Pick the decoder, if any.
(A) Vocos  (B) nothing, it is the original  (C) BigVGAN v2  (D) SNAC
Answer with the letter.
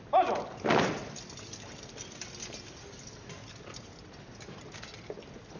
B